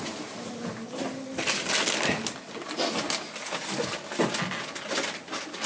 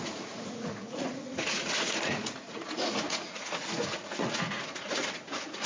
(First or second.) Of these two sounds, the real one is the first